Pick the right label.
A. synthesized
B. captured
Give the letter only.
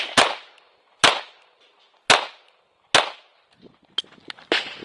B